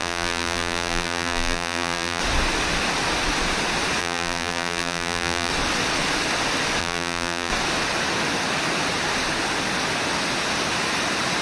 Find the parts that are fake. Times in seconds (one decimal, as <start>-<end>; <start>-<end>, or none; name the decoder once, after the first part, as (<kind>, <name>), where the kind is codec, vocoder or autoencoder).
0.0-2.2 (vocoder, BigVGAN v2); 4.0-5.5; 6.8-7.5